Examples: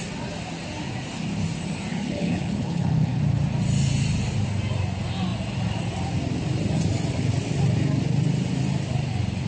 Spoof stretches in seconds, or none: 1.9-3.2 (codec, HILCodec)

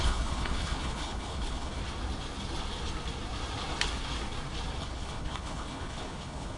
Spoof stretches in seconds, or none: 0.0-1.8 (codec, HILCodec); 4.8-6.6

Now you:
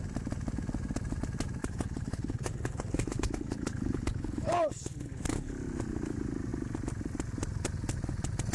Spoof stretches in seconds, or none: 1.6-5.5 (codec, HILCodec)

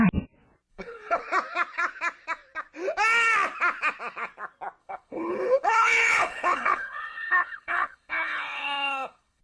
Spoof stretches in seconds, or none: 0.7-1.2 (codec, HILCodec); 4.8-9.4

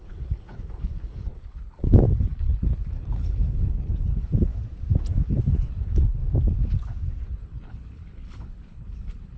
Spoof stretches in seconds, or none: 0.0-4.5 (codec, HILCodec); 5.3-6.2; 7.2-9.4

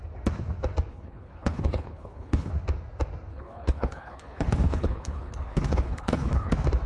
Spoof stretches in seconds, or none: 0.9-2.5 (codec, HILCodec); 3.3-6.5

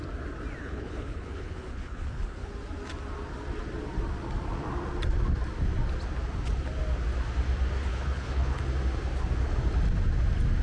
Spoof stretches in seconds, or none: 0.6-2.5 (codec, HILCodec); 7.9-8.6